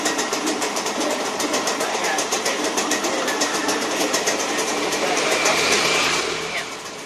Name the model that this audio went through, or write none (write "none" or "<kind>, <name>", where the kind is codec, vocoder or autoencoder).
vocoder, BigVGAN v2